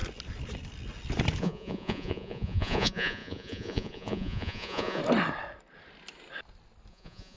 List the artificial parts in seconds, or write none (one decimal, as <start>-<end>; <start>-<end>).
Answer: 1.4-5.0; 6.9-7.4